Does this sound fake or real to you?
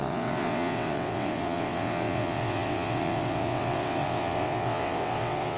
fake